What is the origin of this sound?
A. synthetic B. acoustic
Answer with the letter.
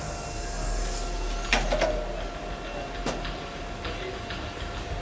B